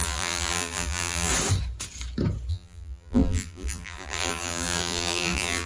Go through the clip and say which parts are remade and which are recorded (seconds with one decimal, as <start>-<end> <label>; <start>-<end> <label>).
0.0-1.3 remade; 1.3-2.5 recorded; 2.5-5.7 remade